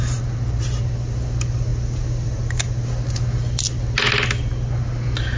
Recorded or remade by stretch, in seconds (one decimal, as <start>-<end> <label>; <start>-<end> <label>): 0.0-5.4 recorded